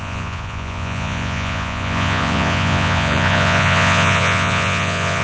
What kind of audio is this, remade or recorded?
remade